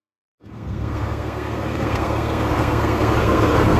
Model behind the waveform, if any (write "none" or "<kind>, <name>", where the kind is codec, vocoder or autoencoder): codec, SNAC